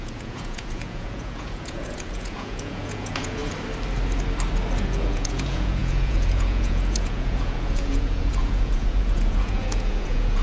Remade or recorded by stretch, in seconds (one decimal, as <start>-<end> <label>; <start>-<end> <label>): 0.0-3.4 remade; 3.4-4.8 recorded; 4.8-10.4 remade